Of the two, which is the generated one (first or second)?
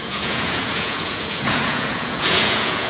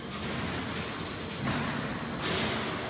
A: first